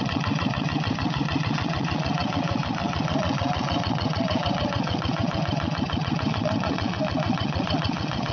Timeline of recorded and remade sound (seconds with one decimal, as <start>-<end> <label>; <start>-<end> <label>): 0.0-8.3 remade